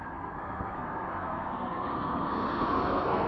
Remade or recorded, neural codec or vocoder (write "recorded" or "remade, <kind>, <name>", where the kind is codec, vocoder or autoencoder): remade, codec, SNAC